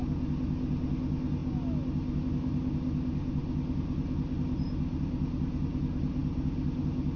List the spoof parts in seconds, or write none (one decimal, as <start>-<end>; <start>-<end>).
none